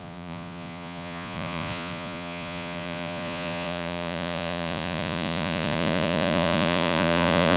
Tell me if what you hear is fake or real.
fake